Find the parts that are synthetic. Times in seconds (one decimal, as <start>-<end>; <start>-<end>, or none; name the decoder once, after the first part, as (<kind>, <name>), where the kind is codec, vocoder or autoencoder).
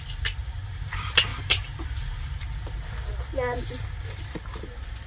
0.4-0.9 (vocoder, BigVGAN v2); 1.3-2.4